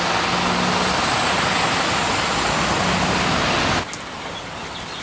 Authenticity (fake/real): real